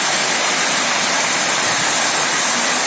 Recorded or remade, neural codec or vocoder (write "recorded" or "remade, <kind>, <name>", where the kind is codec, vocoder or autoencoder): recorded